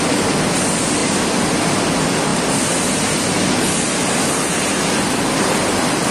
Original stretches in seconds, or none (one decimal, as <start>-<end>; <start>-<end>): 0.0-2.3; 3.7-6.1